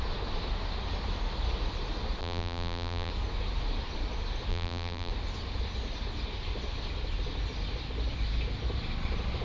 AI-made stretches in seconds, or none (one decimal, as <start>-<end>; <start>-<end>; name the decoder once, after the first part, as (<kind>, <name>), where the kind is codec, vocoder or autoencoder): 2.2-3.1 (vocoder, BigVGAN v2); 4.5-5.1

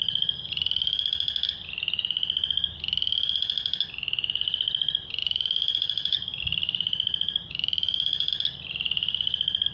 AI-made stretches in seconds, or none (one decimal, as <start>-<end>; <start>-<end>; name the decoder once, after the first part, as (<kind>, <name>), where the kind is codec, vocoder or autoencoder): 5.2-8.3 (vocoder, BigVGAN v2)